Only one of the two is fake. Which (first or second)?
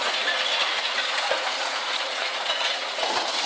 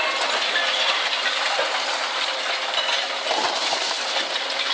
first